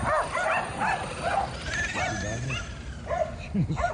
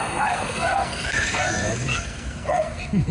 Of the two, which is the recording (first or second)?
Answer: first